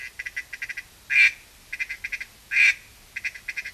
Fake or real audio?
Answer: real